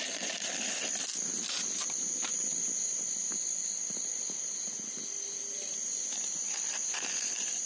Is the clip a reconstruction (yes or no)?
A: no